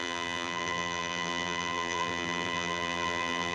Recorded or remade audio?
remade